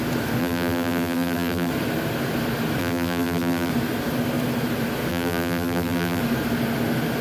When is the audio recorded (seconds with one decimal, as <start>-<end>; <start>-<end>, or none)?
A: 0.0-0.4; 1.7-2.8; 3.7-5.1; 6.2-7.2